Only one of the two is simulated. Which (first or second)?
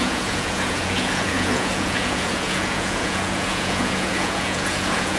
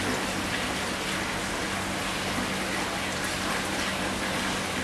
first